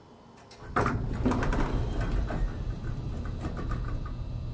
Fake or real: real